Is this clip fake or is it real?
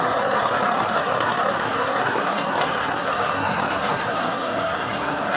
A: fake